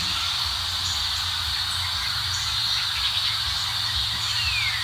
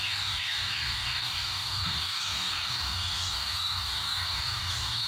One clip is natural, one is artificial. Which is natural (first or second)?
first